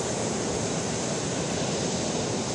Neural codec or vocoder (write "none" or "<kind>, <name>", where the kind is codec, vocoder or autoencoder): vocoder, BigVGAN v2